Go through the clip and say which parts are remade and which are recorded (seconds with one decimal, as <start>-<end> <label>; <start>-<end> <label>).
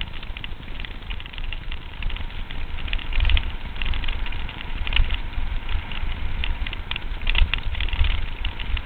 0.0-1.1 recorded; 1.1-2.1 remade; 2.1-3.0 recorded; 3.0-5.7 remade; 5.7-6.4 recorded; 6.4-8.0 remade; 8.0-8.9 recorded